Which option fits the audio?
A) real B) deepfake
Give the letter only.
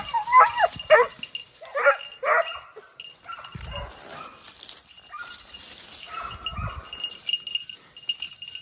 A